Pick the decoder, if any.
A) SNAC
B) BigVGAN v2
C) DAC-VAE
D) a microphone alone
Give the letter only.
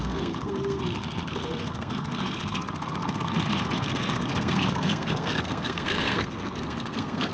A